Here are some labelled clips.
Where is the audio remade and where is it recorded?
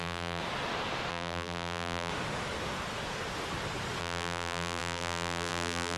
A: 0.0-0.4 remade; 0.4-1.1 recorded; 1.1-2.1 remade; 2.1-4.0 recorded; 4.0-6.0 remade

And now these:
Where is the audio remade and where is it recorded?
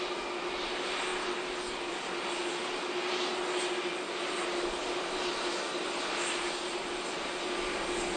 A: 0.0-8.2 recorded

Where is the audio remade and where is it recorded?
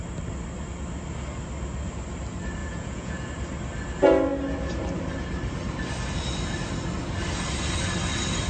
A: 0.0-2.6 recorded; 2.6-3.3 remade; 3.3-8.5 recorded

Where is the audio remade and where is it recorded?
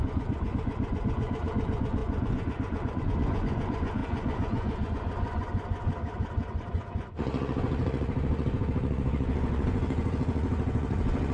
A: 0.0-11.3 remade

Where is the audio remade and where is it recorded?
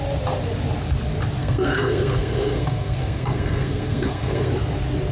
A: 0.0-1.4 recorded; 1.4-4.5 remade; 4.5-5.1 recorded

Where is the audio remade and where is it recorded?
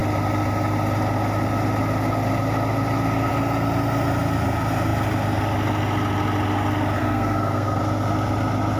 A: 0.0-7.0 recorded; 7.0-7.8 remade; 7.8-8.8 recorded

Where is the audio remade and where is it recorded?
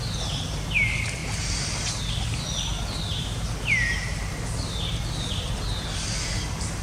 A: 0.0-6.8 recorded